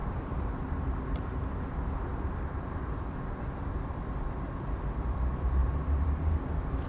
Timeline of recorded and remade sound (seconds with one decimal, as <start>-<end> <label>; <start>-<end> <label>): 0.0-1.5 remade; 1.5-2.1 recorded; 2.1-3.2 remade; 3.2-5.6 recorded; 5.6-6.4 remade; 6.4-6.9 recorded